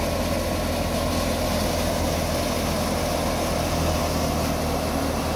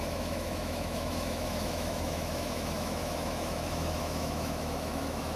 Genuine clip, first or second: first